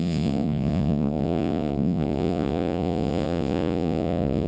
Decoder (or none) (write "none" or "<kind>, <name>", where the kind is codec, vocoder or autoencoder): vocoder, Vocos